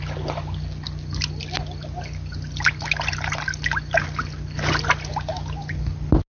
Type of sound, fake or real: real